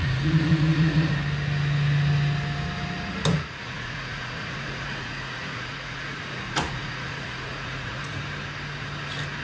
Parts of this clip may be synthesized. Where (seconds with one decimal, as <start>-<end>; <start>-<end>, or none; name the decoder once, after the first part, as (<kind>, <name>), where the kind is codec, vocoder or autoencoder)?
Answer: 0.0-1.1 (vocoder, Vocos); 3.3-8.2